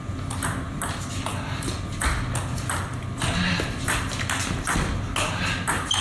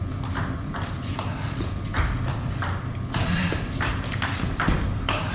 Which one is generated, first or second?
second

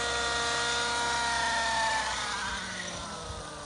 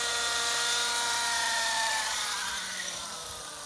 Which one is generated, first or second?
second